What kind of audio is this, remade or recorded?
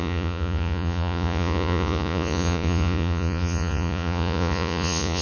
remade